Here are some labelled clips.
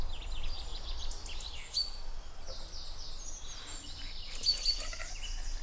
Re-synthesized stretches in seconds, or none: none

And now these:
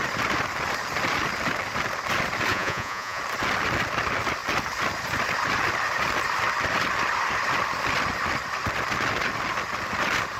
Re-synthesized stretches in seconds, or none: 2.5-3.2 (vocoder, Vocos)

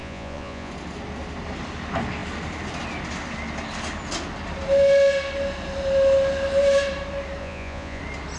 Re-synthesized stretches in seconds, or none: 0.0-0.7 (vocoder, Vocos); 7.4-8.0

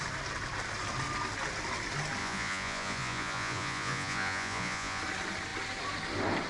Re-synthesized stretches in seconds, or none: 2.2-5.0 (vocoder, Vocos)

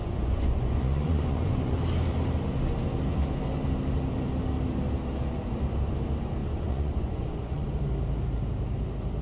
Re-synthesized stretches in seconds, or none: 0.0-1.8 (vocoder, Vocos); 6.4-7.8

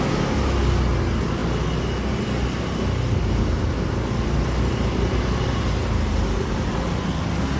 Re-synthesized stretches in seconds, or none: none

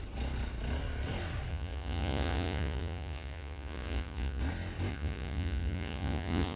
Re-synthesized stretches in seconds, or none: 1.5-4.4 (vocoder, Vocos); 4.9-6.6